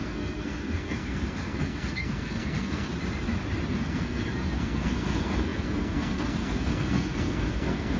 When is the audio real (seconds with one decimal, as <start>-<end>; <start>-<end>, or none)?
2.9-3.7